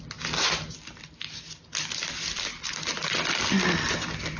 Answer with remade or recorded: recorded